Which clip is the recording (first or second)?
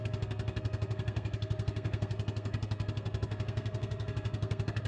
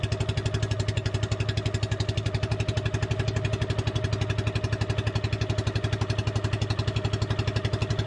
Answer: second